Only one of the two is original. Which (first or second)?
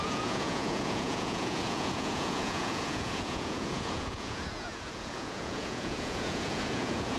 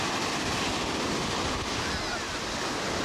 second